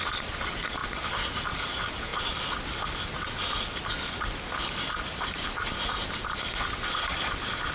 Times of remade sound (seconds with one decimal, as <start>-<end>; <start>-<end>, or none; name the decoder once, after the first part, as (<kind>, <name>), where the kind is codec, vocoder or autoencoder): none